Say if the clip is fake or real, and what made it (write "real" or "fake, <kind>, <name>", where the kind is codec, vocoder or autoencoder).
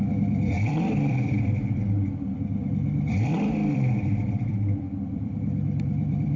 fake, vocoder, BigVGAN v2